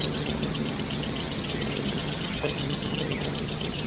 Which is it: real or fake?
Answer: fake